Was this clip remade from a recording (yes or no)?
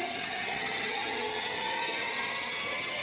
yes